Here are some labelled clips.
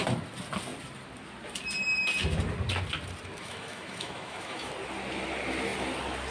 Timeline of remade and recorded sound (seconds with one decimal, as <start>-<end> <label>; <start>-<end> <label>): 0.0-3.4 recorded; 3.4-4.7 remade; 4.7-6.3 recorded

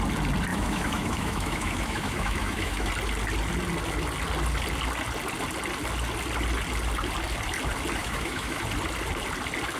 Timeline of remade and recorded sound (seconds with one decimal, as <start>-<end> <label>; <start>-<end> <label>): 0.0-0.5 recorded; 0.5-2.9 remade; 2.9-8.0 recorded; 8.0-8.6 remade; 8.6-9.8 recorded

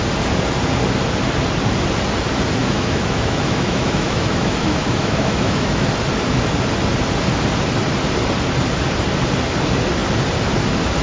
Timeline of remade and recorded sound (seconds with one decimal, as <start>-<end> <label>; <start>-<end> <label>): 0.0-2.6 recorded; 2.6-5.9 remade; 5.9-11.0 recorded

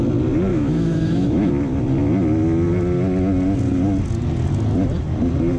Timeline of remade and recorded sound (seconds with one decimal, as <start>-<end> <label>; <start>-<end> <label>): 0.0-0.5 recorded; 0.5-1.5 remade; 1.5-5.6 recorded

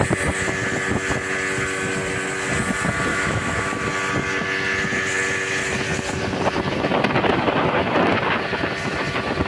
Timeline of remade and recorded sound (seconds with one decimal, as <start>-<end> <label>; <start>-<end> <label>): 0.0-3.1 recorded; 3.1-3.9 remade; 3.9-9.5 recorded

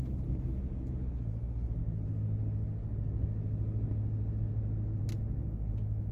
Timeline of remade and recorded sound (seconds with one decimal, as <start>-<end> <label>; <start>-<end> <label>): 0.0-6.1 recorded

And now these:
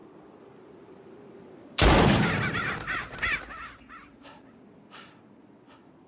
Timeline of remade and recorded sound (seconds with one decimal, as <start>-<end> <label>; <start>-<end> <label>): 0.0-6.1 recorded